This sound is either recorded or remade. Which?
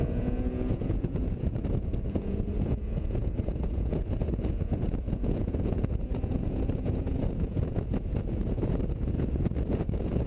remade